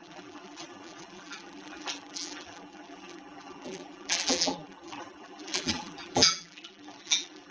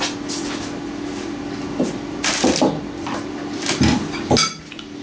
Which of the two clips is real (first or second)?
second